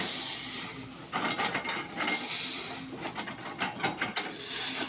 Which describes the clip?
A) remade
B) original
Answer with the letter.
B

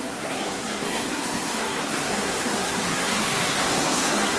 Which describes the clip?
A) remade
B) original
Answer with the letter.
A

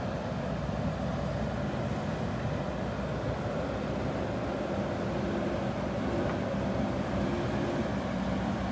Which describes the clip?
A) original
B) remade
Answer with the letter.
A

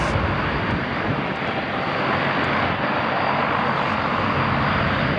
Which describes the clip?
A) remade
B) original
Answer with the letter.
B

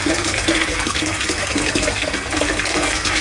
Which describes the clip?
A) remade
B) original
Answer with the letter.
A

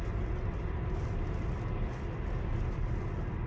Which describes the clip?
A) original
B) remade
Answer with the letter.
A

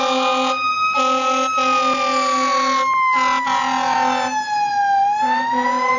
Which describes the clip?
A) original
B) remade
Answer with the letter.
A